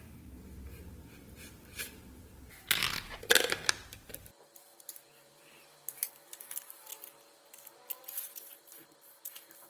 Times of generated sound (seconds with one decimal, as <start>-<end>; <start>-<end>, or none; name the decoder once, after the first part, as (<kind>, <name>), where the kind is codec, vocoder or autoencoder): 4.7-6.4 (vocoder, BigVGAN v2)